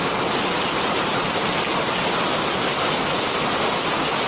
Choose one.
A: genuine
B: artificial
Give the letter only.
A